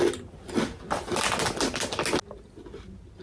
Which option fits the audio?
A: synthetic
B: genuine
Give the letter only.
B